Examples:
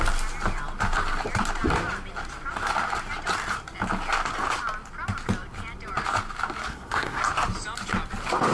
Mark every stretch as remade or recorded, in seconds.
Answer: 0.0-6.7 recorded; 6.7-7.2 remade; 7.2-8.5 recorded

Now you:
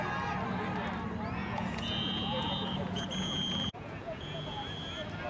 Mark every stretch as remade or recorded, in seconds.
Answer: 0.0-1.4 recorded; 1.4-4.6 remade; 4.6-5.3 recorded

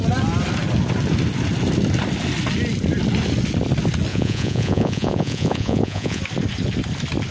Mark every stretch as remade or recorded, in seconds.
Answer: 0.0-4.1 recorded; 4.1-6.2 remade; 6.2-7.3 recorded

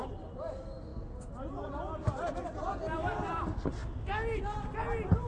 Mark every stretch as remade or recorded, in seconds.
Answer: 0.0-5.3 recorded

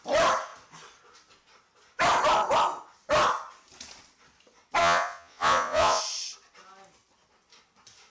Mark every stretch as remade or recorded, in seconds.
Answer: 0.0-4.8 recorded; 4.8-6.0 remade; 6.0-8.1 recorded

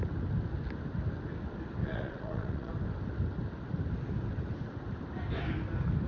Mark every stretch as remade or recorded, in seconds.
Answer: 0.0-1.8 recorded; 1.8-2.7 remade; 2.7-6.1 recorded

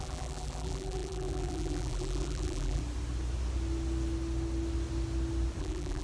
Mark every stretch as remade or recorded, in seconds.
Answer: 0.0-2.8 remade; 2.8-5.6 recorded; 5.6-6.0 remade

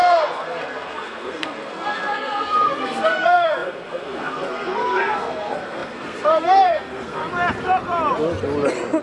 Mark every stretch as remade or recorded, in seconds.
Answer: 0.0-7.2 remade; 7.2-9.0 recorded